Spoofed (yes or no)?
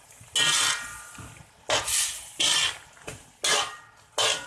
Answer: no